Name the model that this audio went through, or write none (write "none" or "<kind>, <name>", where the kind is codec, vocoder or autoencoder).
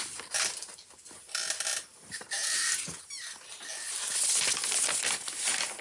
none